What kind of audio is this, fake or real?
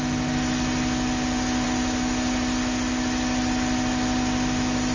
real